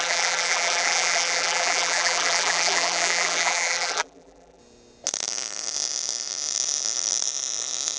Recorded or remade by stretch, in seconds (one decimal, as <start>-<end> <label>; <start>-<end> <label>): 0.0-4.6 remade; 4.6-8.0 recorded